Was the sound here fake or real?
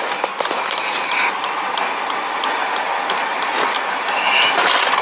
real